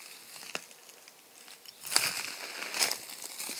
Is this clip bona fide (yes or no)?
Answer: yes